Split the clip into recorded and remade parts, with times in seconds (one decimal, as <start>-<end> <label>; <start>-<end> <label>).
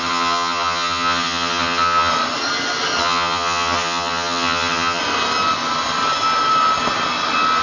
0.0-2.1 remade; 2.1-3.0 recorded; 3.0-5.0 remade; 5.0-7.6 recorded